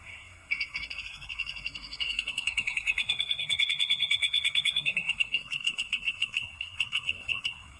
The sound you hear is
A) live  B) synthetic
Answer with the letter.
B